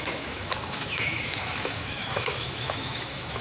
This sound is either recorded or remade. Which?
remade